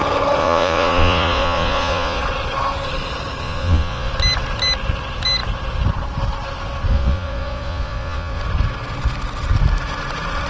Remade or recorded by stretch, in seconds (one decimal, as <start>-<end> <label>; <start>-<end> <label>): 0.0-0.4 recorded; 0.4-2.2 remade; 2.2-3.4 recorded; 3.4-4.1 remade; 4.1-6.9 recorded; 6.9-8.4 remade; 8.4-10.5 recorded